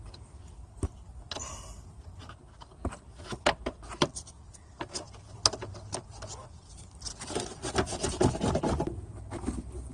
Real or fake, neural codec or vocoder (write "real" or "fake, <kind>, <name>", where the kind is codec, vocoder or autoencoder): real